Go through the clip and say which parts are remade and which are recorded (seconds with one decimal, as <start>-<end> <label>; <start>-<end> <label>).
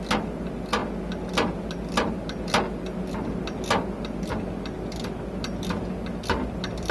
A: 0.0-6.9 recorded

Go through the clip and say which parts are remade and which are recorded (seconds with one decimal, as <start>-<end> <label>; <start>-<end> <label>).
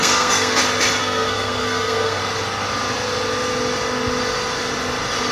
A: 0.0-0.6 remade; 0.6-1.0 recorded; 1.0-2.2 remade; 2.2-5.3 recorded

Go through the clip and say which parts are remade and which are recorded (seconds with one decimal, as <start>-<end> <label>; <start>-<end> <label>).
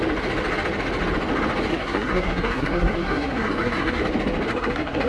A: 0.0-1.7 recorded; 1.7-4.0 remade; 4.0-4.5 recorded; 4.5-5.1 remade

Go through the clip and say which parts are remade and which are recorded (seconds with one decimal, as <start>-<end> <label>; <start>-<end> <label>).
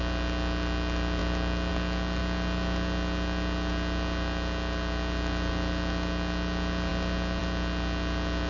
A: 0.0-8.5 recorded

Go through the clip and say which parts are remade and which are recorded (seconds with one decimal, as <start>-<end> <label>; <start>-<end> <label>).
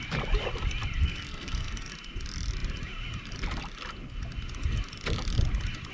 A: 0.0-1.0 recorded; 1.0-1.9 remade; 1.9-5.9 recorded